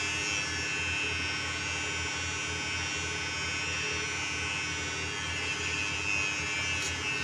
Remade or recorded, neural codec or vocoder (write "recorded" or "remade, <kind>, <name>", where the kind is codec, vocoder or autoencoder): recorded